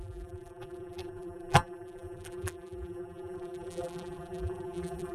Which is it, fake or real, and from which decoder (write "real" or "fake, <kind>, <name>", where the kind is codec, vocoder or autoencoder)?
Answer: fake, vocoder, BigVGAN v2